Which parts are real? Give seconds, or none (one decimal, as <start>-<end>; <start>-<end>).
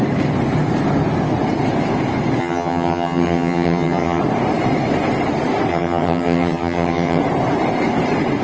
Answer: 0.0-2.4; 4.2-5.7; 7.2-8.4